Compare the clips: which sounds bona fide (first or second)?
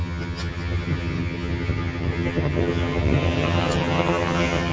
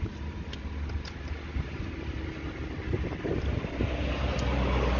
second